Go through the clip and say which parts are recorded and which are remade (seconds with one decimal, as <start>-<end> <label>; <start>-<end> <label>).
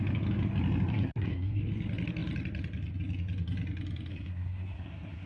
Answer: 0.0-0.9 recorded; 0.9-1.6 remade; 1.6-4.1 recorded; 4.1-5.3 remade